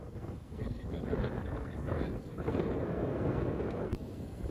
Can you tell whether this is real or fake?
fake